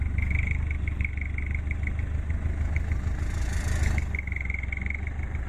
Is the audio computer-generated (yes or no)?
no